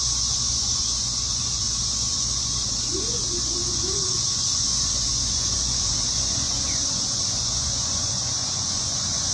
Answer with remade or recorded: remade